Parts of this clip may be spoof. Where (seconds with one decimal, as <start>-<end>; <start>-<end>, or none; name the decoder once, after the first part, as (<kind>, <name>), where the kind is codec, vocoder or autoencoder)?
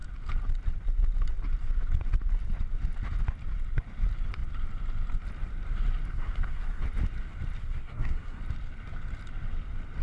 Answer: 6.1-6.8 (codec, SNAC); 7.6-8.4